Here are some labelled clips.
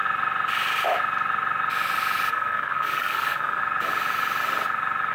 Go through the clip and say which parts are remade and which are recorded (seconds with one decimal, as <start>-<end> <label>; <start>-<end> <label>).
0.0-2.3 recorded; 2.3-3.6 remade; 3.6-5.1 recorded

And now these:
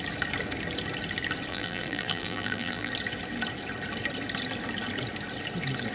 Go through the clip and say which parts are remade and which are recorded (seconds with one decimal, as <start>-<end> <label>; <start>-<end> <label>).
0.0-1.5 recorded; 1.5-2.9 remade; 2.9-5.9 recorded

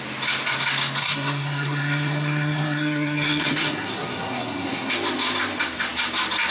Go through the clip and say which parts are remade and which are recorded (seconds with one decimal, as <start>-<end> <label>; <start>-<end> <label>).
0.0-1.0 recorded; 1.0-4.9 remade; 4.9-6.5 recorded

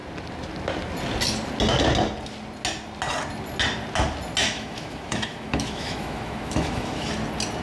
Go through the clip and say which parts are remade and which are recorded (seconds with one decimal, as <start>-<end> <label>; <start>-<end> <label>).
0.0-4.4 recorded; 4.4-7.1 remade; 7.1-7.6 recorded